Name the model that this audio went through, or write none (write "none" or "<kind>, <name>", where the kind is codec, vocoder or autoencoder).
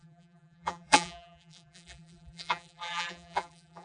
vocoder, BigVGAN v2